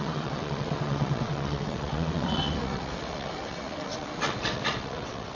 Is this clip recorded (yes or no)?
no